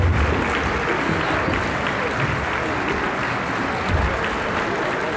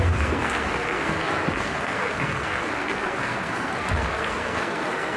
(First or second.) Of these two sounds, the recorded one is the first